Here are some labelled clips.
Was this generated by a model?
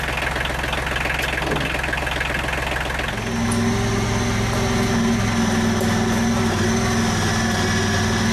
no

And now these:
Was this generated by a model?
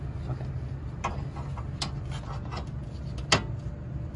no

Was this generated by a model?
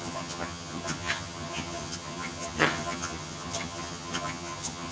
yes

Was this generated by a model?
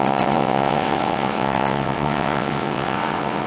yes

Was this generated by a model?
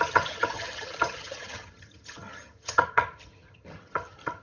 yes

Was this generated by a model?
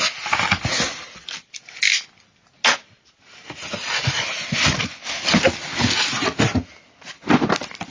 no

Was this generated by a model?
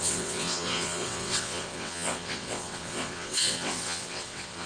yes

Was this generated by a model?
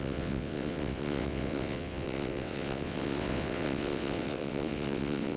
yes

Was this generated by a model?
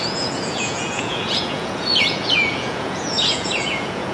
yes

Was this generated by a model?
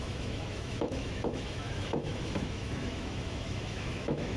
yes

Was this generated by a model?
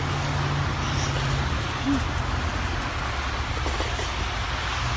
no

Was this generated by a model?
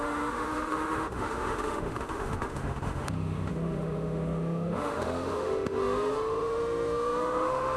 yes